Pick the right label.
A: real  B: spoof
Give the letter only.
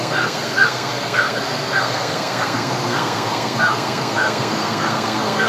B